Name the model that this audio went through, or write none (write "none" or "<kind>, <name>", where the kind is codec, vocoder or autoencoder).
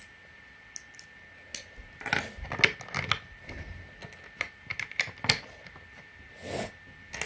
none